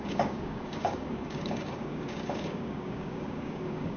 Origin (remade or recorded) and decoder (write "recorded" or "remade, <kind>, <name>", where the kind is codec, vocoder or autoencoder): remade, codec, DAC